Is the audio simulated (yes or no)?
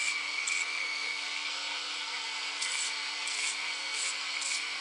yes